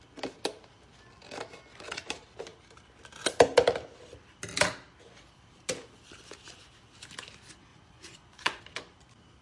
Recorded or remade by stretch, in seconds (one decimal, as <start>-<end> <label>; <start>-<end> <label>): 0.0-7.7 recorded; 7.7-8.6 remade; 8.6-9.4 recorded